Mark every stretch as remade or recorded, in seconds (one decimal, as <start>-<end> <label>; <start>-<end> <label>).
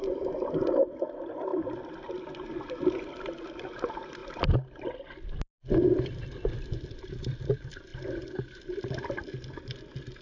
0.0-4.2 remade; 4.2-6.1 recorded; 6.1-7.9 remade; 7.9-8.6 recorded; 8.6-10.2 remade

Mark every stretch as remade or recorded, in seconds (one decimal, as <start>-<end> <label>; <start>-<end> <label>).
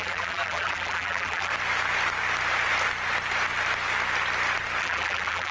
0.0-1.5 remade; 1.5-4.8 recorded; 4.8-5.5 remade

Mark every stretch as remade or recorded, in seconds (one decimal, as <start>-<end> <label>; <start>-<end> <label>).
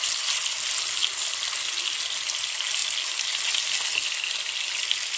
0.0-5.2 recorded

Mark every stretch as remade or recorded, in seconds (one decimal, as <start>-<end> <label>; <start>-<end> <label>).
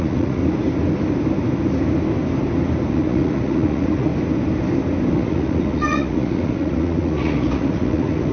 0.0-0.4 remade; 0.4-2.9 recorded; 2.9-4.1 remade; 4.1-5.1 recorded; 5.1-8.3 remade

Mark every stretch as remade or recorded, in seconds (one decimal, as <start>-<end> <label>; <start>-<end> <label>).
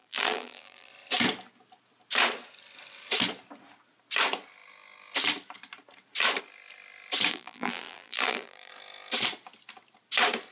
0.0-0.9 remade; 0.9-7.3 recorded; 7.3-8.7 remade; 8.7-10.5 recorded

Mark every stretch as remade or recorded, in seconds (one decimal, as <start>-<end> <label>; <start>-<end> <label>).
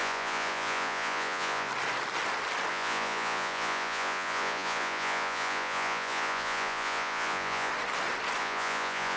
0.0-1.7 remade; 1.7-2.7 recorded; 2.7-7.7 remade; 7.7-8.4 recorded; 8.4-9.2 remade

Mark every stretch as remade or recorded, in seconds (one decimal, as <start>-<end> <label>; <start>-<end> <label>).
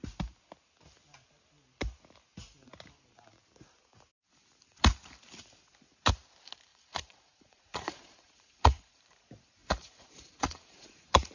0.0-6.7 recorded; 6.7-8.9 remade; 8.9-9.6 recorded; 9.6-11.3 remade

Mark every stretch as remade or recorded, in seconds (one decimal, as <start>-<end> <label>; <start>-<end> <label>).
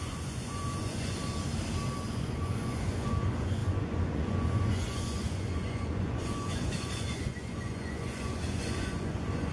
0.0-1.2 remade; 1.2-2.1 recorded; 2.1-9.5 remade